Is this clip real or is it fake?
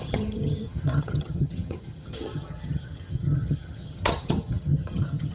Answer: fake